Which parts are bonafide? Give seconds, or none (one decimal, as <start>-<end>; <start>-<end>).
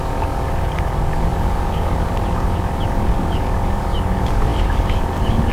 none